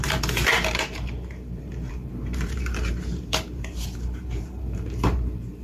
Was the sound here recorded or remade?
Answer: remade